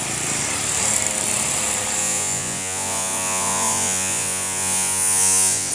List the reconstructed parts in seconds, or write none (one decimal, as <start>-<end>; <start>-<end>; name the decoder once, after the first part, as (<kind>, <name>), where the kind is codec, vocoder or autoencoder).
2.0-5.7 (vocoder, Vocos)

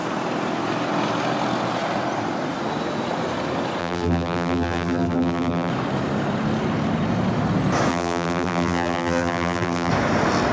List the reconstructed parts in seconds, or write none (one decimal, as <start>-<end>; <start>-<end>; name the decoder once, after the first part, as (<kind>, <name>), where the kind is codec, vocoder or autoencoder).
3.8-5.7 (vocoder, BigVGAN v2); 7.9-9.9

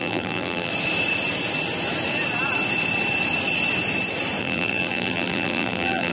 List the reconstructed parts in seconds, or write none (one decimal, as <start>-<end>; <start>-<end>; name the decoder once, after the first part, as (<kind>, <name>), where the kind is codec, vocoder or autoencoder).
0.0-0.7 (vocoder, BigVGAN v2); 4.4-6.1

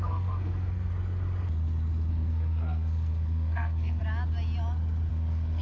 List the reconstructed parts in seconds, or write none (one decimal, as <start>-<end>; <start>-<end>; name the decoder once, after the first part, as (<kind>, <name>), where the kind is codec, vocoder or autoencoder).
0.0-0.9 (codec, SNAC); 2.1-4.0; 5.1-5.6